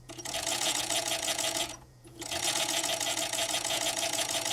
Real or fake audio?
fake